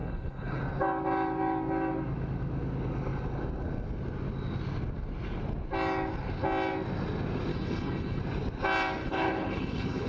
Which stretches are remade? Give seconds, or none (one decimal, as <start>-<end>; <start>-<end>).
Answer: 0.0-0.6; 7.5-8.2; 9.0-10.1